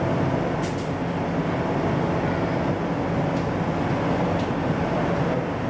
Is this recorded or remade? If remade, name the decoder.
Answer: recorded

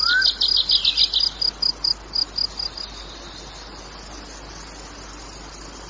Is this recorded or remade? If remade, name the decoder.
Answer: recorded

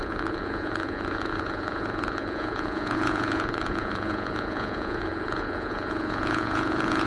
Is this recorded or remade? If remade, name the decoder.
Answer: remade, vocoder, Vocos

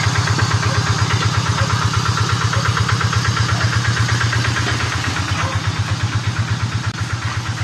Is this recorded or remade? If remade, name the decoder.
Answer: recorded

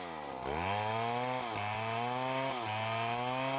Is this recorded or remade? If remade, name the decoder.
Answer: recorded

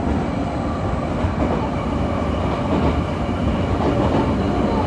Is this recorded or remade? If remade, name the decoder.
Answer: recorded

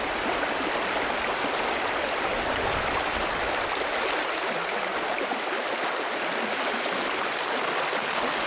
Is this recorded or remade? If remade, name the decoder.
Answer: recorded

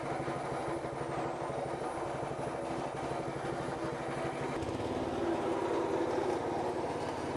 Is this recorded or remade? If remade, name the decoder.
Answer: recorded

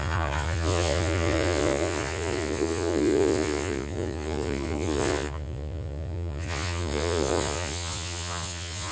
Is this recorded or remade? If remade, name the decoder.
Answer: remade, vocoder, Vocos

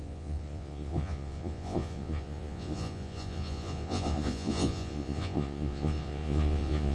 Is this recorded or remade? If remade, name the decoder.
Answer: remade, vocoder, Vocos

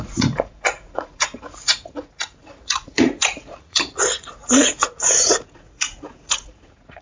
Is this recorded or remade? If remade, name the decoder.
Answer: remade, vocoder, Vocos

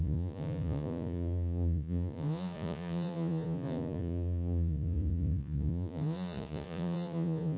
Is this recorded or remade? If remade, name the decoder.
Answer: remade, vocoder, Vocos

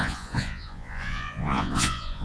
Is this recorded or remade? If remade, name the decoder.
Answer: remade, vocoder, Vocos